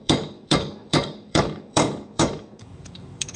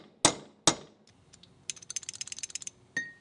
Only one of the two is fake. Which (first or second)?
first